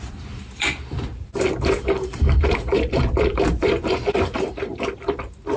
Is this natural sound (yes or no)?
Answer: no